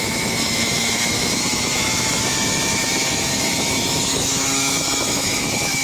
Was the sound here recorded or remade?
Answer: remade